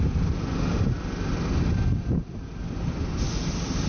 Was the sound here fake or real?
real